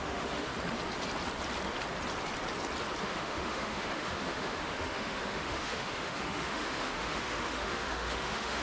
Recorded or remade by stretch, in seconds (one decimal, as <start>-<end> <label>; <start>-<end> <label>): 0.0-0.5 remade; 0.5-3.0 recorded; 3.0-8.6 remade